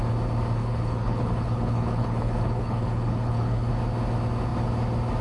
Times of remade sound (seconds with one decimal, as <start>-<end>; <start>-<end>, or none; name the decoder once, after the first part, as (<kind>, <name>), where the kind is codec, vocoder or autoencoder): 0.6-3.7 (codec, HILCodec)